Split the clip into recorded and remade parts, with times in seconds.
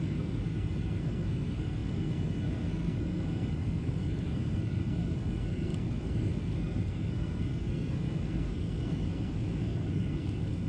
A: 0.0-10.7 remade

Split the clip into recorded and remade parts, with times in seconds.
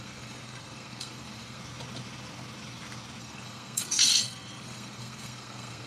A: 0.0-1.6 remade; 1.6-3.2 recorded; 3.2-5.9 remade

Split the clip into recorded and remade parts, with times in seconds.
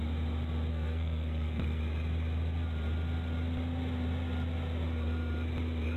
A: 0.0-0.7 recorded; 0.7-1.8 remade; 1.8-6.0 recorded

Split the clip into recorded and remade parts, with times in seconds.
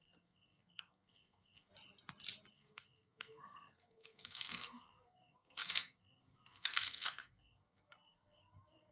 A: 0.0-1.7 remade; 1.7-2.5 recorded; 2.5-8.9 remade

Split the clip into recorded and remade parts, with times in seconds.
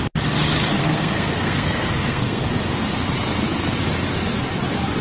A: 0.0-0.8 recorded; 0.8-2.5 remade; 2.5-5.0 recorded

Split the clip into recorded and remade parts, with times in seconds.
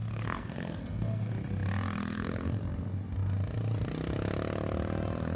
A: 0.0-1.3 remade; 1.3-2.0 recorded; 2.0-2.6 remade; 2.6-5.3 recorded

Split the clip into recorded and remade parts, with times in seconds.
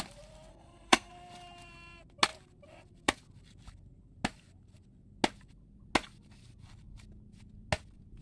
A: 0.0-0.5 recorded; 0.5-1.1 remade; 1.1-8.2 recorded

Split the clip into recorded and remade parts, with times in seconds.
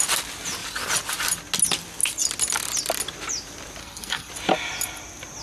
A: 0.0-3.8 recorded; 3.8-4.3 remade; 4.3-5.4 recorded